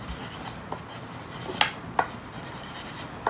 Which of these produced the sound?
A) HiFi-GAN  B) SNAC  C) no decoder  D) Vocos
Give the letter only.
C